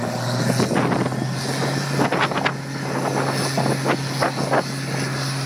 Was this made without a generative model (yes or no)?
yes